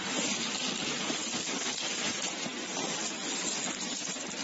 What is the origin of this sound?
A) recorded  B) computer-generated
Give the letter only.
A